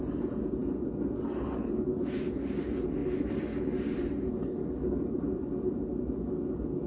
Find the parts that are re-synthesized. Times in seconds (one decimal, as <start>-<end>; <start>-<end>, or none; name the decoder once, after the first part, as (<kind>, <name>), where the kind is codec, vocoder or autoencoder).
none